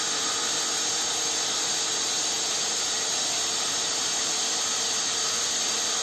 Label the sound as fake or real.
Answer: real